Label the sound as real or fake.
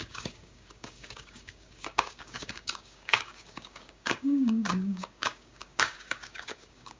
fake